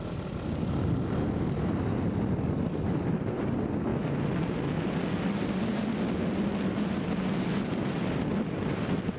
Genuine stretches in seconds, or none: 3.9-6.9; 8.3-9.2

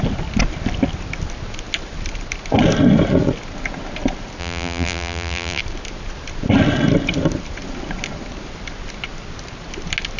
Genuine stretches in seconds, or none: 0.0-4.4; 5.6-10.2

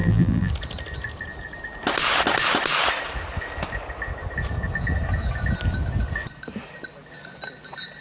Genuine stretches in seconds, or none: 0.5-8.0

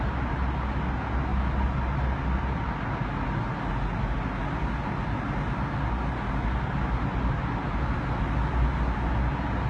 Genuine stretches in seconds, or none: 0.0-9.7

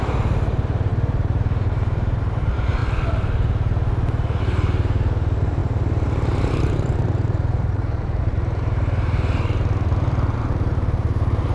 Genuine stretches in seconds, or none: 2.8-4.4